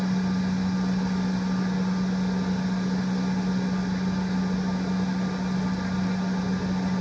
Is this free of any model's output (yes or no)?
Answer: yes